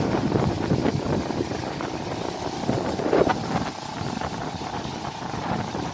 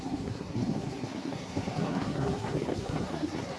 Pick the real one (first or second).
first